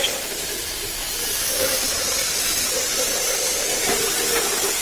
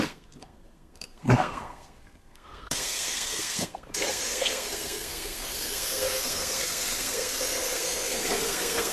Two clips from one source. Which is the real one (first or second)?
first